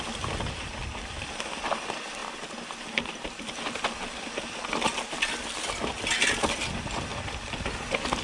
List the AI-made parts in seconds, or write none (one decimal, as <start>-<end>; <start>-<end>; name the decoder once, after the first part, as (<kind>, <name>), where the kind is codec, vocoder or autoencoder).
none